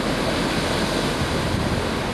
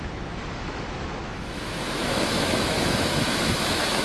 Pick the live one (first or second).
first